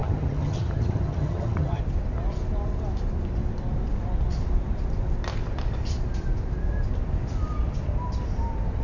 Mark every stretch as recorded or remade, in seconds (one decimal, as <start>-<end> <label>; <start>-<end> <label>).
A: 0.0-1.8 remade; 1.8-8.8 recorded